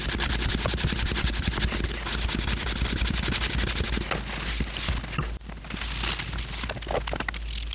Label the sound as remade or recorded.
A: recorded